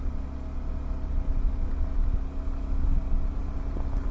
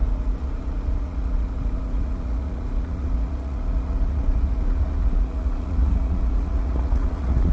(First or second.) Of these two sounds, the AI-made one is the second